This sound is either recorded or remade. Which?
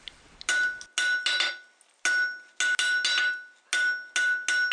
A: recorded